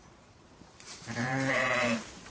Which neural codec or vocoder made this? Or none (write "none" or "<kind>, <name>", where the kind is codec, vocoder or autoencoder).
vocoder, BigVGAN v2